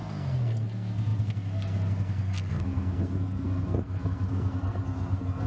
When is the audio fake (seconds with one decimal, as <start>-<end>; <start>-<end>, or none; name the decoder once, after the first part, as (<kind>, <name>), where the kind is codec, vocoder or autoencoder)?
0.0-5.5 (codec, SNAC)